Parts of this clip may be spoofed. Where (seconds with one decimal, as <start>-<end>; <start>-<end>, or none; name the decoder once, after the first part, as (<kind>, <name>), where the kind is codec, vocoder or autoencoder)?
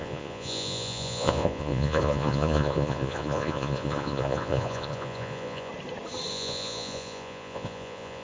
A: 0.0-5.7 (vocoder, Vocos); 6.3-8.2